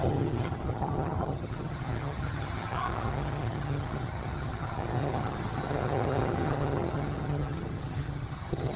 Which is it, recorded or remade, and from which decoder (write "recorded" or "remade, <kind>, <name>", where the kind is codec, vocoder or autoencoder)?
remade, vocoder, HiFi-GAN